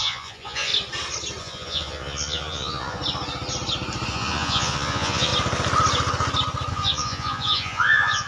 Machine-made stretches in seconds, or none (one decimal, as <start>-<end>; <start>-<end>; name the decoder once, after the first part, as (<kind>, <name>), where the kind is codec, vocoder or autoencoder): 0.0-0.7 (vocoder, Vocos); 1.4-3.0; 4.1-5.3; 6.7-8.3